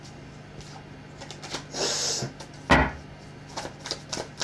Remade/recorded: recorded